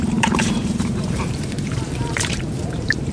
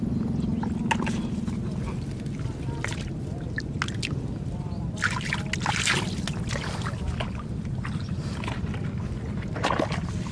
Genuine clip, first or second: second